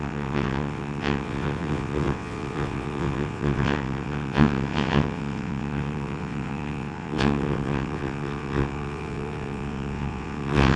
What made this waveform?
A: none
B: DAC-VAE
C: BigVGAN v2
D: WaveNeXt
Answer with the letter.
D